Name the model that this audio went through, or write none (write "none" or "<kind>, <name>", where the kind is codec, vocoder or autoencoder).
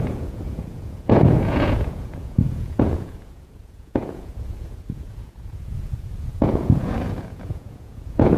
vocoder, Vocos